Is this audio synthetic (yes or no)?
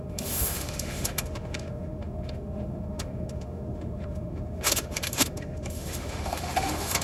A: yes